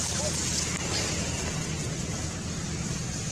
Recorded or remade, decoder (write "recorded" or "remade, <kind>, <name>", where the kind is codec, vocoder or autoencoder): recorded